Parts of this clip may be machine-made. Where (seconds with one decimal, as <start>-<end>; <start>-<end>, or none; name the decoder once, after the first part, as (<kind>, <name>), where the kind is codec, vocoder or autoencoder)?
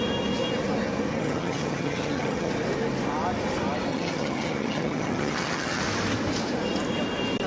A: 1.1-2.5 (vocoder, HiFi-GAN); 3.9-5.8